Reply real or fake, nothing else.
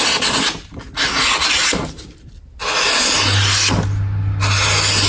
real